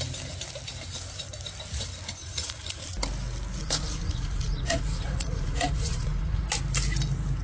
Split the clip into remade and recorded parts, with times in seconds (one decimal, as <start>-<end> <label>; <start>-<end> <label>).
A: 0.0-2.2 recorded; 2.2-2.8 remade; 2.8-3.6 recorded; 3.6-6.5 remade; 6.5-7.4 recorded